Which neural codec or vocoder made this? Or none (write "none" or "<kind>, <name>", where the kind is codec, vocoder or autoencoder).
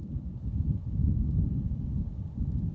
none